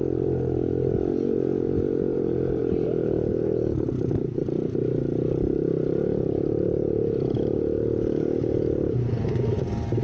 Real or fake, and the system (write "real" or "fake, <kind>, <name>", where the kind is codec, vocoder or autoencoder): fake, vocoder, BigVGAN v2